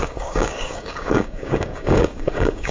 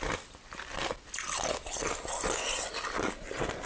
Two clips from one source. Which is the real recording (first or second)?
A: second